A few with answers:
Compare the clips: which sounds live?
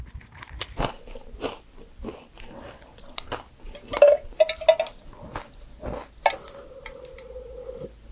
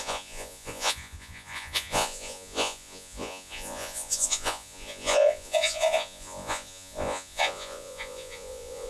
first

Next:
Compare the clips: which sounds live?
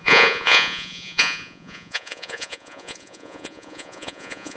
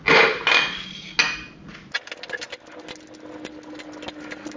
second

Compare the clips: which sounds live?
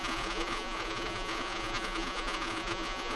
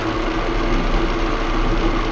second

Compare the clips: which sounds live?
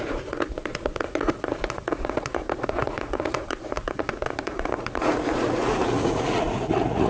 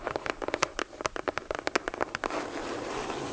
second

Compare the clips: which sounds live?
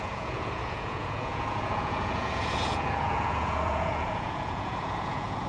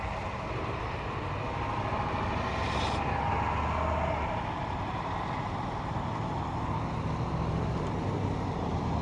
second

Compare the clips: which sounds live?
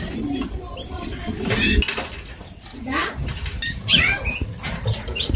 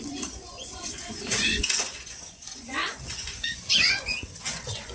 first